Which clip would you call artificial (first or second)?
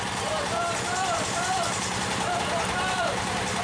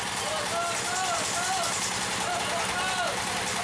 first